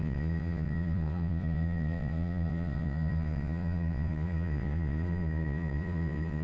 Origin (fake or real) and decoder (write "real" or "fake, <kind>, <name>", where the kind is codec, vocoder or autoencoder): fake, vocoder, Vocos